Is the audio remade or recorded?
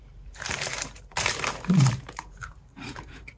remade